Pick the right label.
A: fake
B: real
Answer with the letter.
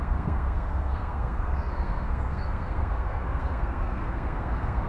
A